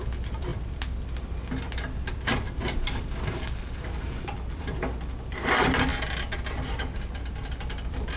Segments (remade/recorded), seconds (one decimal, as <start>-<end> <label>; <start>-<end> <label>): 0.0-0.5 remade; 0.5-2.1 recorded; 2.1-8.2 remade